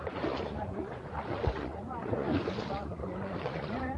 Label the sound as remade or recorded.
remade